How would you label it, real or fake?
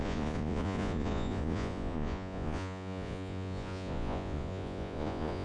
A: fake